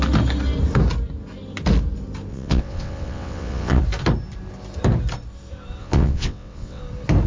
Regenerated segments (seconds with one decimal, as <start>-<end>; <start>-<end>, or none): 2.3-3.8; 5.8-6.8